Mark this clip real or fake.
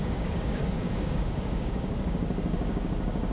fake